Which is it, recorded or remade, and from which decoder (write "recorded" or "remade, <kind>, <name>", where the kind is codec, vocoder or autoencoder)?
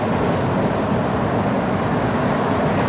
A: recorded